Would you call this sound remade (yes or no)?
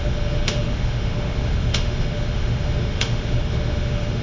yes